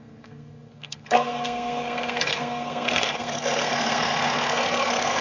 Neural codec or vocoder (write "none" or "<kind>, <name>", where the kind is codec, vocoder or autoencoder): codec, SNAC